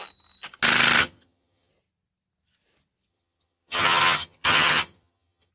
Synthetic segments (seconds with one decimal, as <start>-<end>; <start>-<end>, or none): 1.0-1.7; 3.1-5.5